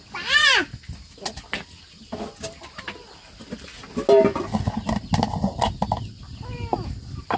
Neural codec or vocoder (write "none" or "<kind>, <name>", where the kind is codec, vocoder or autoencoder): none